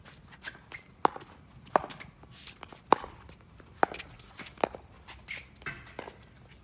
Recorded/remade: recorded